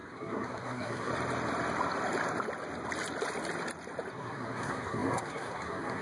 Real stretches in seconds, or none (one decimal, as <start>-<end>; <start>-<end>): 1.1-4.1